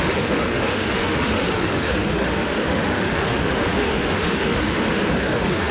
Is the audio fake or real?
fake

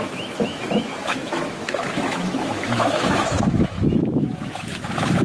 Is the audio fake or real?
fake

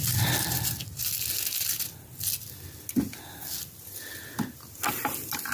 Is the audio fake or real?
real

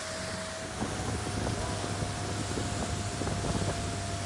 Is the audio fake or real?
real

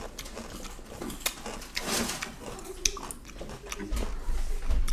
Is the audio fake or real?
real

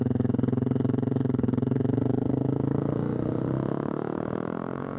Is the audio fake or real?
fake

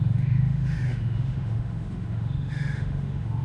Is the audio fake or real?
fake